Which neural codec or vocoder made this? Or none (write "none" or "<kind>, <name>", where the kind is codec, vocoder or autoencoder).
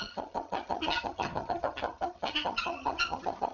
vocoder, HiFi-GAN